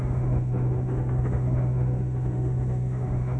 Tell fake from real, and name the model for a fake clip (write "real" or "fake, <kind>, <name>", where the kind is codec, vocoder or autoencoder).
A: fake, autoencoder, DAC-VAE